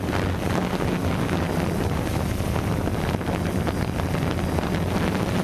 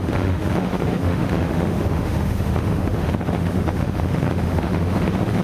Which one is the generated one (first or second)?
second